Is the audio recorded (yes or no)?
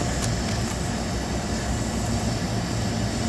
yes